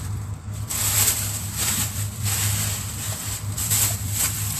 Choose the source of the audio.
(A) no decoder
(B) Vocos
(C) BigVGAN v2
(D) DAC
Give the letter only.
C